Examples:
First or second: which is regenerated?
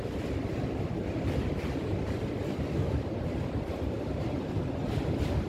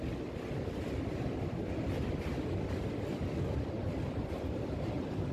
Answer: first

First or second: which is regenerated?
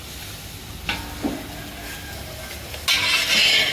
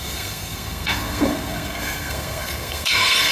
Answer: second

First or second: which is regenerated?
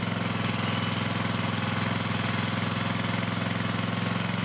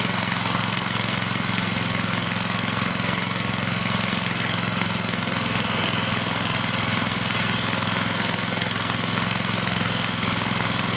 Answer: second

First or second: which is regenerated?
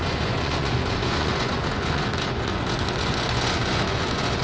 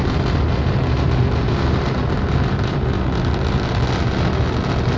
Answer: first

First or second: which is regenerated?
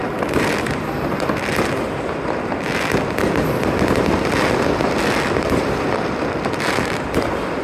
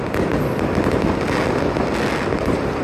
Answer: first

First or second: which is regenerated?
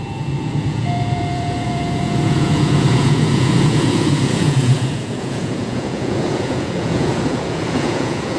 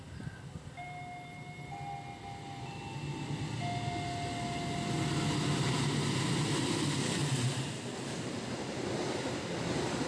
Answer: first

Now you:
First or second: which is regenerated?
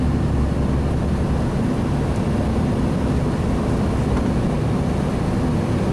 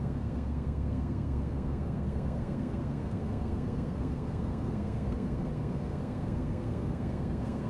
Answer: second